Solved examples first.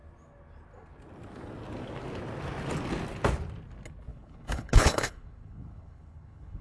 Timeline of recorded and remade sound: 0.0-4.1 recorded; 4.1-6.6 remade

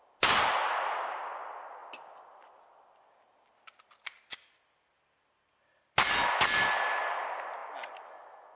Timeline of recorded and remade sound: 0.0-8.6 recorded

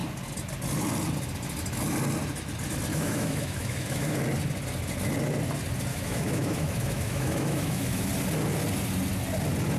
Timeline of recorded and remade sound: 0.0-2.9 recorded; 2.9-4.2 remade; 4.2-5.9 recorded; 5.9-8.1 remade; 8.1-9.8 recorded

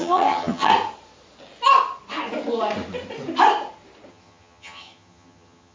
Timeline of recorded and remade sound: 0.0-0.7 remade; 0.7-4.1 recorded; 4.1-5.7 remade